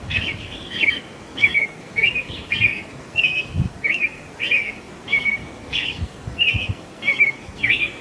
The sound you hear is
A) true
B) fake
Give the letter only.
B